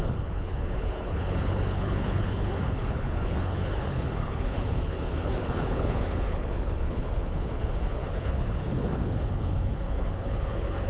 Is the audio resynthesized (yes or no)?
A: yes